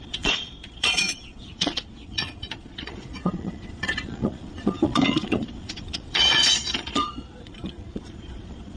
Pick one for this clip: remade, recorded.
remade